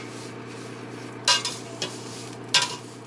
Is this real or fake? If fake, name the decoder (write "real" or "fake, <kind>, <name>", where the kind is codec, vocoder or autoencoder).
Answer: real